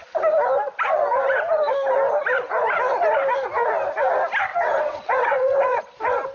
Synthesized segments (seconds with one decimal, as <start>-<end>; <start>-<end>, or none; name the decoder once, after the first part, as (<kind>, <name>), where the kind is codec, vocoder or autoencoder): 4.5-5.8 (vocoder, WaveNeXt)